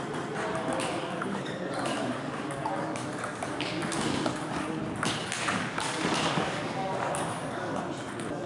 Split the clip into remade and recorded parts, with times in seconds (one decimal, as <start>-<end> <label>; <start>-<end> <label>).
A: 0.0-0.5 recorded; 0.5-4.8 remade; 4.8-5.2 recorded; 5.2-7.8 remade; 7.8-8.5 recorded